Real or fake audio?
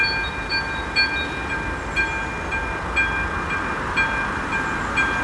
real